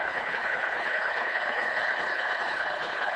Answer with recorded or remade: remade